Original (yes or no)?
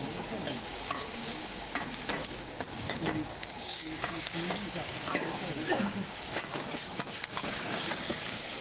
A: no